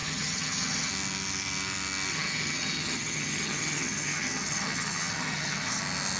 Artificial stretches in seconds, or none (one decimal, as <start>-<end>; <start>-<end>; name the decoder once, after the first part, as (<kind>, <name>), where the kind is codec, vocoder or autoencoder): 0.0-0.9 (vocoder, HiFi-GAN); 2.1-5.8